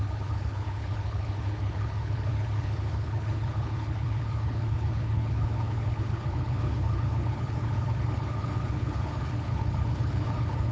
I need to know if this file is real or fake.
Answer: fake